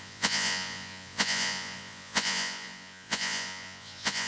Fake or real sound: fake